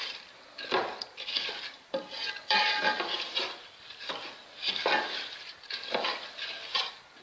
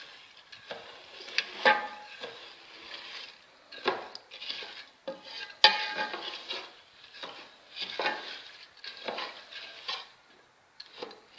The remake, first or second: first